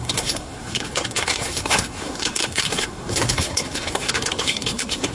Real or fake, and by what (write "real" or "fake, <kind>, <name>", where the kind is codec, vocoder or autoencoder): fake, codec, SNAC